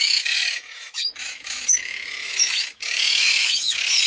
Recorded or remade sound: remade